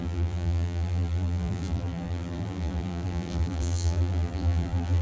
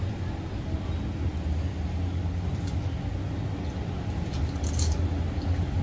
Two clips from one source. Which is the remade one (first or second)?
first